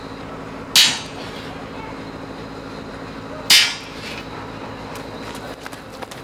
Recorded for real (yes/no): yes